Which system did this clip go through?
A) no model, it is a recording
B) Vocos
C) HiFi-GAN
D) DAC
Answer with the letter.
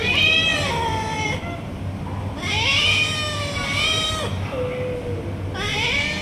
A